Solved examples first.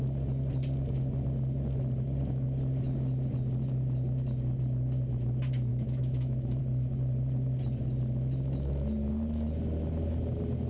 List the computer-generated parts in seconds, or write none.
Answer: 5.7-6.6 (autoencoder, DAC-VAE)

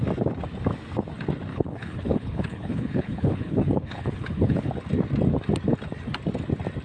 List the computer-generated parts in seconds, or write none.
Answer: 1.5-4.7 (codec, HILCodec)

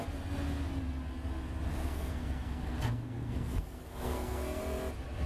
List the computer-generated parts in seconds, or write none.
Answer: 1.7-4.6 (codec, SNAC)

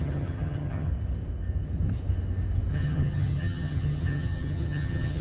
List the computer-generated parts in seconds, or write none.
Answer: 0.0-0.9 (vocoder, HiFi-GAN); 2.7-5.2